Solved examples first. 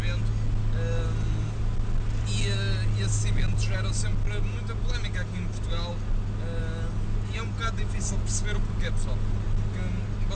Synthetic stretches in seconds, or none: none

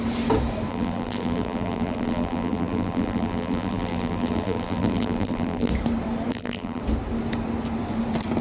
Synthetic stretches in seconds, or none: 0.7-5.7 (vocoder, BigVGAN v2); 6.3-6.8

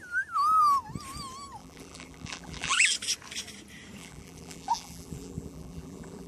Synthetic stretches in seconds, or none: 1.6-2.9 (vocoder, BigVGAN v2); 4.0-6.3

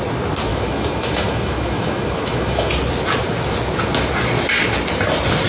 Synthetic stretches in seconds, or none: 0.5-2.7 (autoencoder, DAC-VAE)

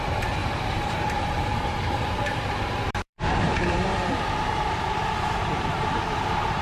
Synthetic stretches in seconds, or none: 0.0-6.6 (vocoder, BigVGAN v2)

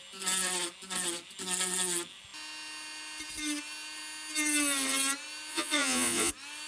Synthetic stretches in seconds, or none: 5.5-6.3 (vocoder, Vocos)